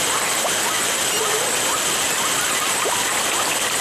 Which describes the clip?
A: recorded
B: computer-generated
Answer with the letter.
A